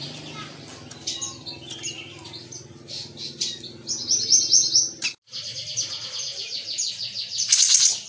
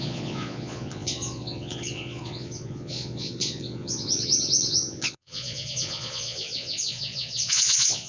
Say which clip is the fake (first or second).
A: second